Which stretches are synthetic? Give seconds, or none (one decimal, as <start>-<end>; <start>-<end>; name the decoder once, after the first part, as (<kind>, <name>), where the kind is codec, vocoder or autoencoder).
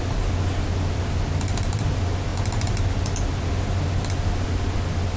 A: none